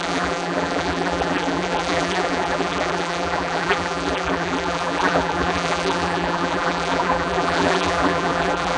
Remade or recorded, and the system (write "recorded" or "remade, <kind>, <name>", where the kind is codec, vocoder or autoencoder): remade, vocoder, BigVGAN v2